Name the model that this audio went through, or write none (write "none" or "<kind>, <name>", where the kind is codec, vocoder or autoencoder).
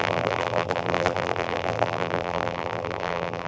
vocoder, BigVGAN v2